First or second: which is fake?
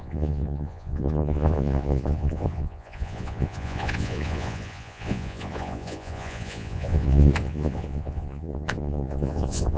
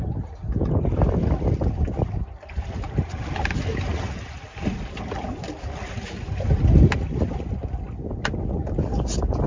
first